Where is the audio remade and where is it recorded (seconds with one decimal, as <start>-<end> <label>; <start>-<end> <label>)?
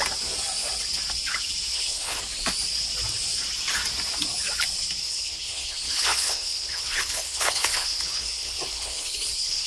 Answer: 0.0-1.7 recorded; 1.7-2.2 remade; 2.2-5.0 recorded; 5.0-9.7 remade